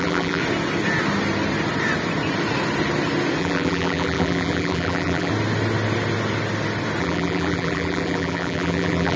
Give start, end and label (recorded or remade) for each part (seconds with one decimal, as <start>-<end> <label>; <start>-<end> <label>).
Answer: 0.0-0.4 remade; 0.4-3.4 recorded; 3.4-5.3 remade; 5.3-7.0 recorded; 7.0-9.2 remade